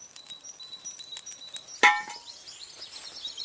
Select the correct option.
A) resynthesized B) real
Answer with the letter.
B